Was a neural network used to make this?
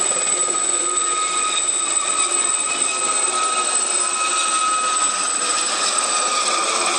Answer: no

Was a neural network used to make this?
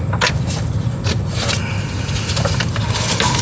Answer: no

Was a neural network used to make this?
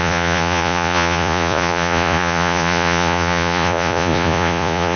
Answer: yes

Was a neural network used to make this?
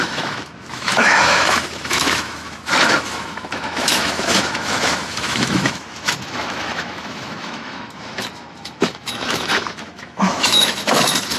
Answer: yes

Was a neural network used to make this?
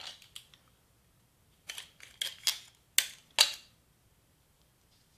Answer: no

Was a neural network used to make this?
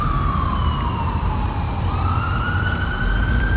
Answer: no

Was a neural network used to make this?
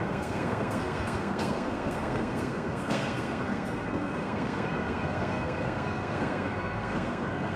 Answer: yes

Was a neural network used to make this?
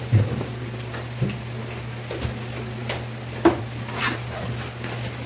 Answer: no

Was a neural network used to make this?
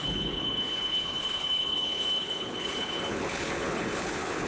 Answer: yes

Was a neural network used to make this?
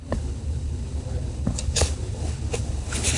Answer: yes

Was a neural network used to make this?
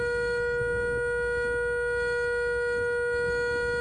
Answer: no